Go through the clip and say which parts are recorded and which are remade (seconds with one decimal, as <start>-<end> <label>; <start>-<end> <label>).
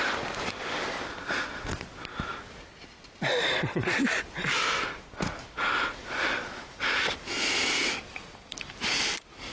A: 0.0-9.5 recorded